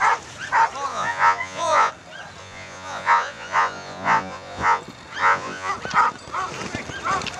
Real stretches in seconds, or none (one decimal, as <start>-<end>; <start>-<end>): 0.0-0.9; 1.9-2.4; 4.8-5.2; 5.7-7.4